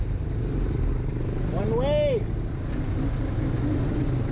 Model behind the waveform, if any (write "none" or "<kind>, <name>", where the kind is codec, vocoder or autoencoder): none